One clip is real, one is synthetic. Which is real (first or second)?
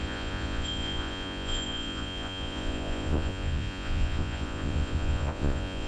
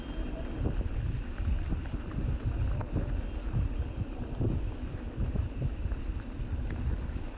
second